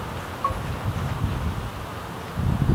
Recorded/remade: recorded